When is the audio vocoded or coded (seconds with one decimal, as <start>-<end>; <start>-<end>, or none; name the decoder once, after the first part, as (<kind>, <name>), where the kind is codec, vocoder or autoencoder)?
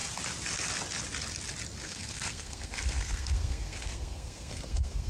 1.8-5.1 (codec, SNAC)